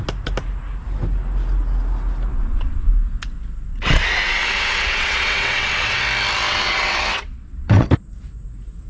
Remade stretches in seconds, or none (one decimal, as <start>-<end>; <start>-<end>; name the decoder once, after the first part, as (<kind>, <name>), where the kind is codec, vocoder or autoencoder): 2.3-2.9 (vocoder, WaveNeXt); 3.7-6.0; 6.5-7.9